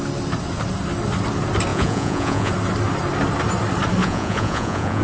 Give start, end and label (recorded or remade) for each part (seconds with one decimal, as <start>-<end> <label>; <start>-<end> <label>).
0.0-1.7 recorded; 1.7-2.5 remade; 2.5-4.0 recorded; 4.0-5.0 remade